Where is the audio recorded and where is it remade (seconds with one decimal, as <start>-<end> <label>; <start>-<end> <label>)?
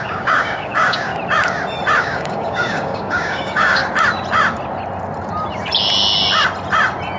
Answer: 0.0-1.1 remade; 1.1-2.0 recorded; 2.0-3.8 remade; 3.8-7.2 recorded